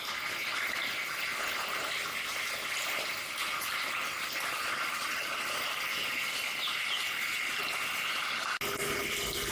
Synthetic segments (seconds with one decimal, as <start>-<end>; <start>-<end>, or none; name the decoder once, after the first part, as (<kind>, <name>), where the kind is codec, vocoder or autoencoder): none